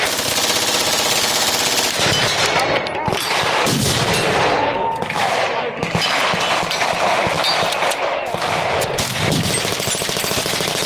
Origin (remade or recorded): recorded